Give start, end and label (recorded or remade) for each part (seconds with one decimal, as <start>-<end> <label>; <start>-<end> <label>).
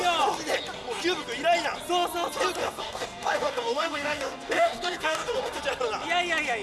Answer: 0.0-2.6 recorded; 2.6-5.6 remade; 5.6-6.6 recorded